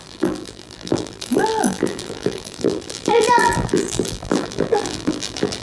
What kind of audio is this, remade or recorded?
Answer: remade